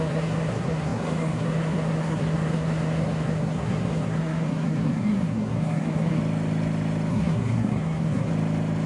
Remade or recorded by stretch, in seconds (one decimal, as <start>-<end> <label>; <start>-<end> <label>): 0.0-6.2 remade; 6.2-7.1 recorded; 7.1-8.3 remade; 8.3-8.9 recorded